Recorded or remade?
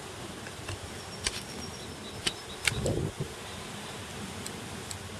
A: recorded